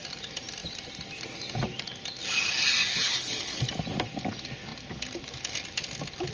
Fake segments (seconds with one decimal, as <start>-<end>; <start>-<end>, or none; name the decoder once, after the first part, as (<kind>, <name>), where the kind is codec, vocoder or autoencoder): 2.9-3.6 (codec, HILCodec)